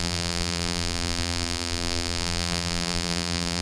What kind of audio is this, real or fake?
fake